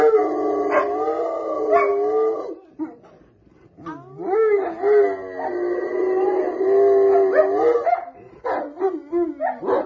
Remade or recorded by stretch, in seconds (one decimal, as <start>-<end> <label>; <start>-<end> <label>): 0.0-9.9 recorded